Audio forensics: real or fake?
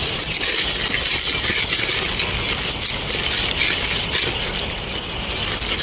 real